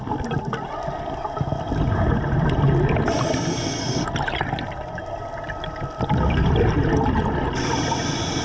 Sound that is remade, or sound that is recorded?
recorded